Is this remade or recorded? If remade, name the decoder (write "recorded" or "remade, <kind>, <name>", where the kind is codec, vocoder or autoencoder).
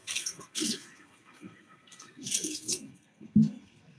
remade, codec, SNAC